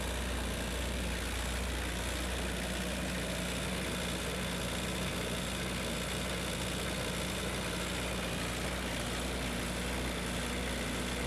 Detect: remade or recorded recorded